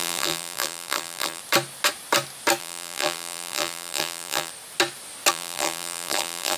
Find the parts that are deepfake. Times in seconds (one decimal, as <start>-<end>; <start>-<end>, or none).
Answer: 0.0-1.4; 2.6-4.5; 5.3-6.6